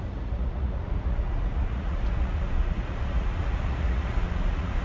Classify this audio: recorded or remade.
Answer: remade